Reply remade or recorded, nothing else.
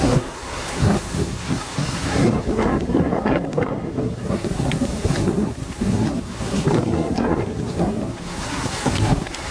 remade